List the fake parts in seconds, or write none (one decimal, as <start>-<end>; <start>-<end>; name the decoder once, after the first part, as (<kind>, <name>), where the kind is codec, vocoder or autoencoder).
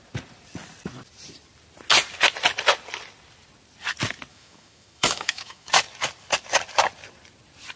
4.3-5.7 (autoencoder, DAC-VAE)